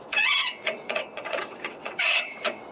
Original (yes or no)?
no